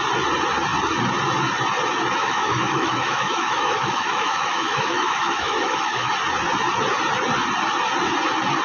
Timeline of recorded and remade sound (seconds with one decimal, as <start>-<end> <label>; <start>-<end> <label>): 0.0-2.2 recorded; 2.2-6.1 remade; 6.1-8.6 recorded